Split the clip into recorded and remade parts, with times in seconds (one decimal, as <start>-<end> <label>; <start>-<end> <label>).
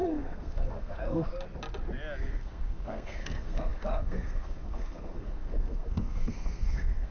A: 0.0-1.3 remade; 1.3-2.3 recorded; 2.3-7.1 remade